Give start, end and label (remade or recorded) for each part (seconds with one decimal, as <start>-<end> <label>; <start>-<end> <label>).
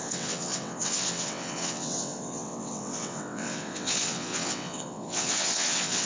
0.0-6.1 remade